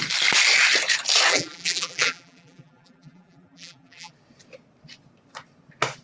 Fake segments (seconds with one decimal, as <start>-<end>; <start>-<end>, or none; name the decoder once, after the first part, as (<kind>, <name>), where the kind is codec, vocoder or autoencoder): 1.3-4.1 (vocoder, BigVGAN v2)